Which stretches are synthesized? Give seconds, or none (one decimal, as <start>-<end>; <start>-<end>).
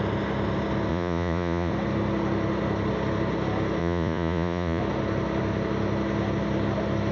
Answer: 0.9-1.7; 3.8-4.8